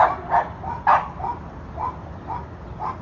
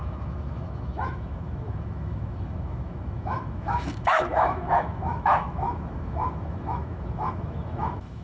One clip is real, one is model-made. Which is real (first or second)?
first